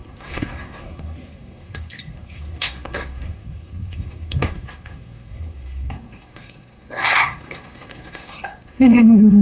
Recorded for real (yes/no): no